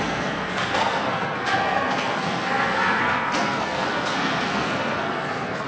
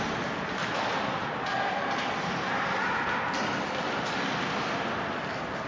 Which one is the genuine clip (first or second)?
second